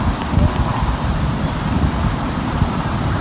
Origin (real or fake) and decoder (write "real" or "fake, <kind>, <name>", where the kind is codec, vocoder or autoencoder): real